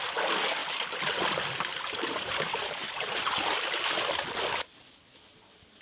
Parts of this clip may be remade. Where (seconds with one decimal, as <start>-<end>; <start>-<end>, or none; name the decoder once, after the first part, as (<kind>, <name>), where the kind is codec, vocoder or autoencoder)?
0.6-3.8 (vocoder, BigVGAN v2)